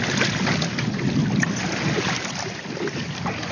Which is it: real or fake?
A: real